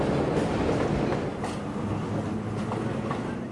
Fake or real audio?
real